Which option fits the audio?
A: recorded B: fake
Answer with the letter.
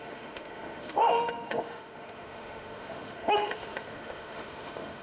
B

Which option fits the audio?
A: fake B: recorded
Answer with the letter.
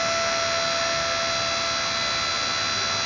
B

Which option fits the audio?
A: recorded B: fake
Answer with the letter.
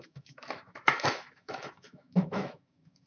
B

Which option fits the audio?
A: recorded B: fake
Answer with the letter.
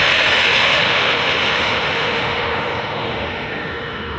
B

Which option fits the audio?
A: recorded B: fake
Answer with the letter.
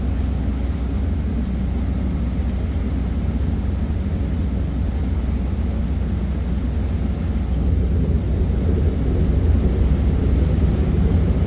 A